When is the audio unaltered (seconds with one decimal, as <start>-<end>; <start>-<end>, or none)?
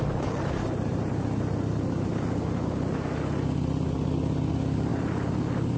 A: 0.0-5.8